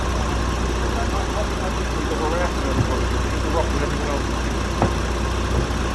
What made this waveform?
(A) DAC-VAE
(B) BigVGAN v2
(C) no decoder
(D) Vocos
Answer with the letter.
C